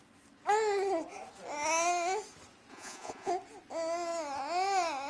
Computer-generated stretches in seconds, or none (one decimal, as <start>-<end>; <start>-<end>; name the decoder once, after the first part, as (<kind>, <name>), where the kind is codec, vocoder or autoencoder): 2.7-3.3 (vocoder, Vocos)